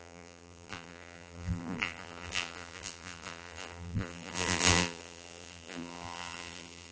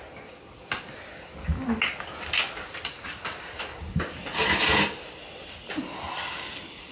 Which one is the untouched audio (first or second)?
second